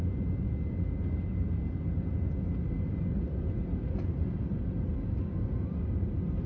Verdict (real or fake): real